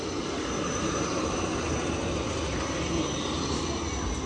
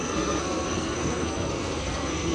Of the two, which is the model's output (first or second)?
second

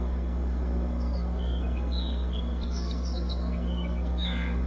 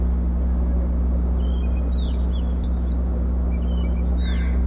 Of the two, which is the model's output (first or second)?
first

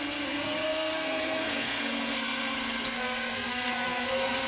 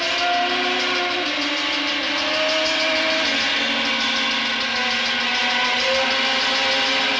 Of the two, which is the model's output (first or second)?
first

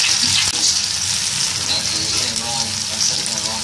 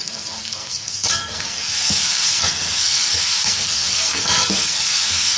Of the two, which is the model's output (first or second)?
second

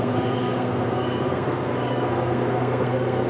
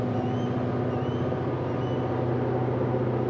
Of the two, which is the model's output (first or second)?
first